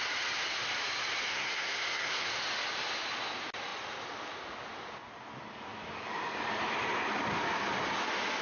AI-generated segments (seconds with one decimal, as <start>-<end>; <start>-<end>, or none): 1.3-2.3